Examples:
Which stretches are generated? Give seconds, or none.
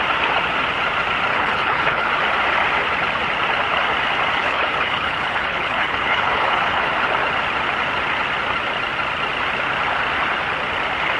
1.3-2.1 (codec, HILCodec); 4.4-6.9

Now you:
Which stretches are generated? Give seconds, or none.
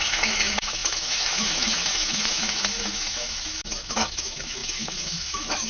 0.0-5.7 (autoencoder, DAC-VAE)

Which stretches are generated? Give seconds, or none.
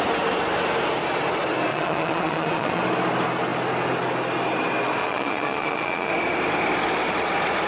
1.7-2.8 (vocoder, Vocos); 5.0-6.1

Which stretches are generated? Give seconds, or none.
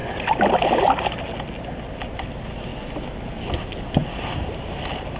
4.0-4.6 (vocoder, BigVGAN v2)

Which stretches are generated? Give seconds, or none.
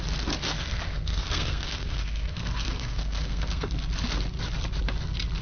0.5-3.7 (codec, SNAC)